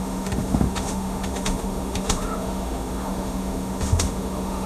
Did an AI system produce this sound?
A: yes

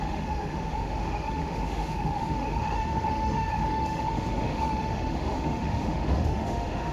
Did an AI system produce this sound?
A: yes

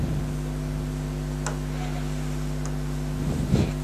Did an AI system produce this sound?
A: no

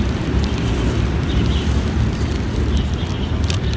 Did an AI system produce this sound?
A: yes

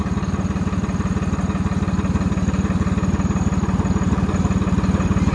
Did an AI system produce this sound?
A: no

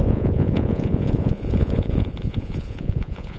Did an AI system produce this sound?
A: yes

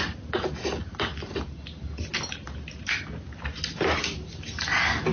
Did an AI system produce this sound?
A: no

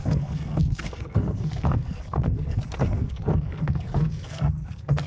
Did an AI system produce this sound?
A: yes